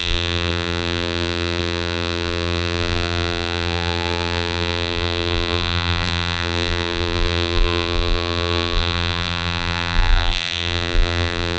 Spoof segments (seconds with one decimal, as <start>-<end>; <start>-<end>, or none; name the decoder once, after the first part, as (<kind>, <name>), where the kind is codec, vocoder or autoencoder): 0.0-11.6 (vocoder, BigVGAN v2)